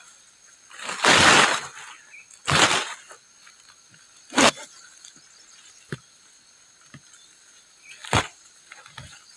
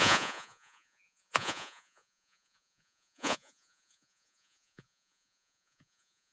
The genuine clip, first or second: first